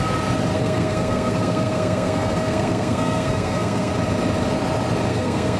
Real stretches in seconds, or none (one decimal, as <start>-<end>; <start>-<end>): 0.0-0.5; 3.9-5.1